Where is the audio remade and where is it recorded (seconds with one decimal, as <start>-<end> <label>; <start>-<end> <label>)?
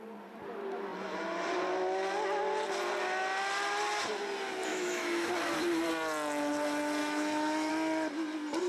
0.0-4.7 recorded; 4.7-5.3 remade; 5.3-7.0 recorded; 7.0-7.7 remade; 7.7-8.7 recorded